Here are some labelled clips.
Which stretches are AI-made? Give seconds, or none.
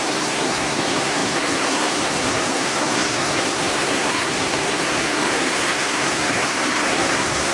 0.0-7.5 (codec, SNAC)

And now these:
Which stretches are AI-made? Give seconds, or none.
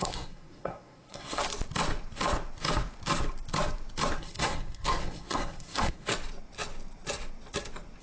0.0-1.4 (codec, SNAC); 4.2-6.1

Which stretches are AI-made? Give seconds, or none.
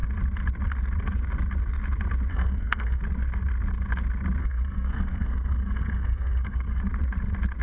2.3-3.0 (codec, SNAC); 4.4-6.8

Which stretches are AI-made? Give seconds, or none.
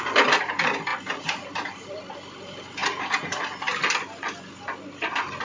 none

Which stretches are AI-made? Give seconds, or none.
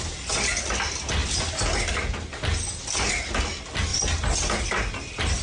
none